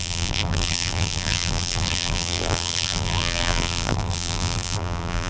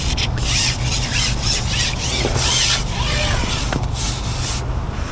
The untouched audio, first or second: second